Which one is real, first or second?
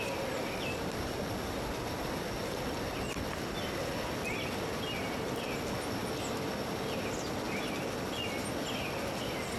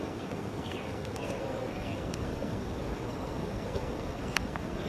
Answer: first